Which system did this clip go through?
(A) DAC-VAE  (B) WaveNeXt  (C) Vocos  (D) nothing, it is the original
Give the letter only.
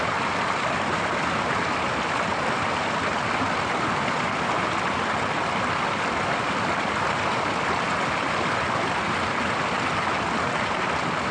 D